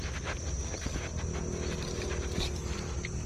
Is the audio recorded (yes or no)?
yes